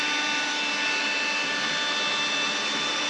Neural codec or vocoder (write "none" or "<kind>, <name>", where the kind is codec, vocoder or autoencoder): none